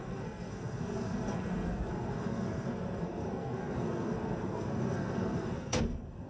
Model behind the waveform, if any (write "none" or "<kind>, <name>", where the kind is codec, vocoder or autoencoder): codec, SNAC